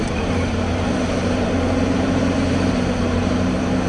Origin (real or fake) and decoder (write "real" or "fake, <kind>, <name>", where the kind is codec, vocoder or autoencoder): fake, vocoder, BigVGAN v2